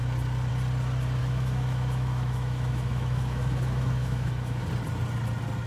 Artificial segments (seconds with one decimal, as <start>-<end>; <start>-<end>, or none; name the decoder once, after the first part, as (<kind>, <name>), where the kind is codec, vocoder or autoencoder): 1.2-4.6 (autoencoder, DAC-VAE)